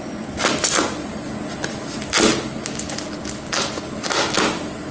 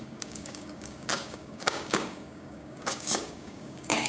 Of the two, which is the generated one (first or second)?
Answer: second